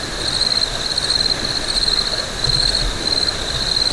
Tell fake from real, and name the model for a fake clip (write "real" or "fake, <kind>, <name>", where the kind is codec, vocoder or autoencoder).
real